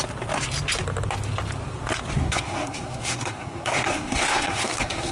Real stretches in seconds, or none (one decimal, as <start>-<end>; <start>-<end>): 0.0-2.2